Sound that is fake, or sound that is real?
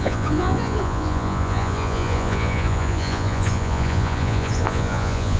fake